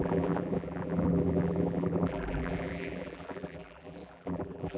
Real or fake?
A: fake